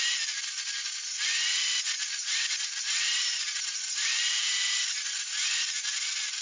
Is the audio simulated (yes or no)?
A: no